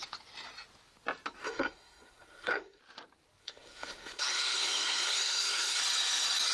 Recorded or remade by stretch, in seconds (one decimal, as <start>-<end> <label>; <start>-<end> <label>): 0.0-1.4 recorded; 1.4-2.8 remade; 2.8-3.4 recorded; 3.4-5.8 remade; 5.8-6.5 recorded

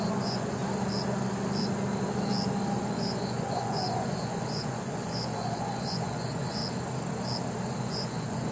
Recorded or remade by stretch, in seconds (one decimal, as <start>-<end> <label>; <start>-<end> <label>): 0.0-0.6 remade; 0.6-2.8 recorded; 2.8-6.6 remade; 6.6-7.8 recorded; 7.8-8.5 remade

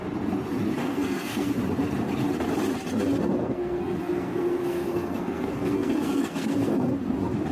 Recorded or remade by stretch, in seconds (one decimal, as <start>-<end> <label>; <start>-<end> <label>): 0.0-0.8 recorded; 0.8-1.5 remade; 1.5-3.4 recorded; 3.4-6.9 remade; 6.9-7.5 recorded

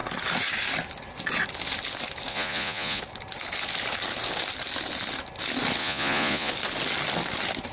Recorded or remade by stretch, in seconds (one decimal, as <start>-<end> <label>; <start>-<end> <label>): 0.0-2.3 recorded; 2.3-3.0 remade; 3.0-5.8 recorded; 5.8-6.5 remade; 6.5-7.7 recorded

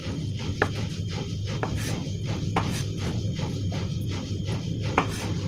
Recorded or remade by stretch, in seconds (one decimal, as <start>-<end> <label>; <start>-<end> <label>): 0.0-5.5 recorded